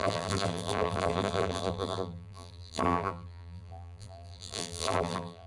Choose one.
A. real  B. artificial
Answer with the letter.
B